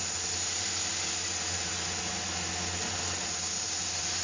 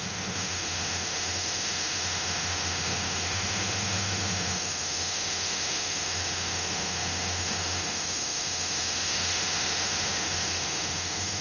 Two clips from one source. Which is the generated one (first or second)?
second